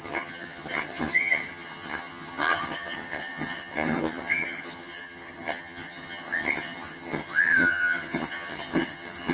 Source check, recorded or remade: remade